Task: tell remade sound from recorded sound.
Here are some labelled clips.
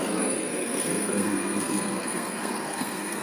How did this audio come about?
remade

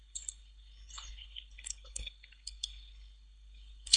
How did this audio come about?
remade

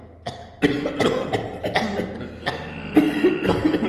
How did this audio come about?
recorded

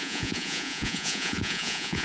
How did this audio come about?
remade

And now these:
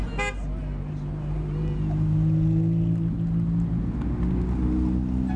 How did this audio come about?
recorded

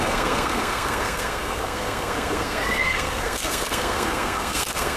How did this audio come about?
remade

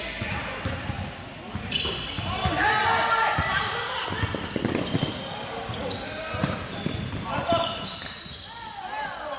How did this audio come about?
recorded